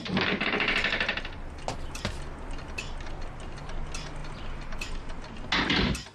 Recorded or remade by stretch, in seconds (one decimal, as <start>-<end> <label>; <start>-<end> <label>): 0.0-6.1 recorded